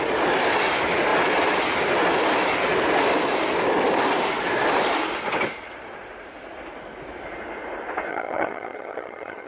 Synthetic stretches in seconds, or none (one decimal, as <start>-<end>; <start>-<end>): 8.1-9.5